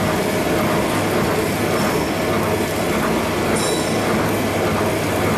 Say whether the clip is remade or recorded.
recorded